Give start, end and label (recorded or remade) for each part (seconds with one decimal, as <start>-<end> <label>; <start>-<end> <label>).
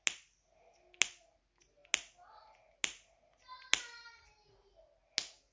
0.0-5.5 recorded